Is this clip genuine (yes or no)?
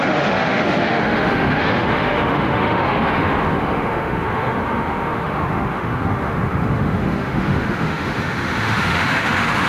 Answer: no